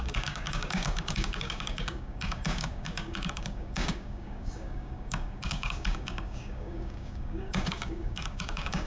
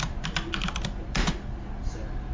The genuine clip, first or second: second